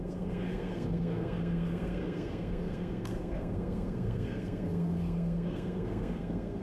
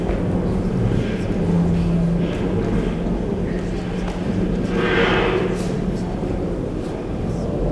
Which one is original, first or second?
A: second